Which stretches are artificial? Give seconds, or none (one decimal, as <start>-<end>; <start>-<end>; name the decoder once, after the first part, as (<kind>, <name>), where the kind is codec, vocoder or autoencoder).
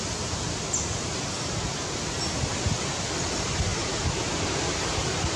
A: 3.7-4.9 (vocoder, BigVGAN v2)